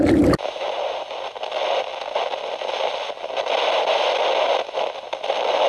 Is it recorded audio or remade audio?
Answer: recorded